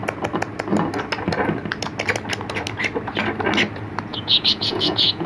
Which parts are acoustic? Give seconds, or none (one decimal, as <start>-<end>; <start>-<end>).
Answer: 0.0-4.1